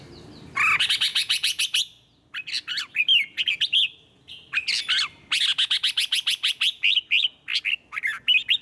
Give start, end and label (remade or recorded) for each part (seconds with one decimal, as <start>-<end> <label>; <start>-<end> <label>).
0.0-1.1 recorded; 1.1-1.6 remade; 1.6-8.6 recorded